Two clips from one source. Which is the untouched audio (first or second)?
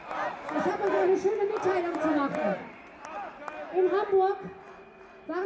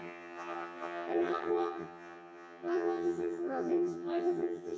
first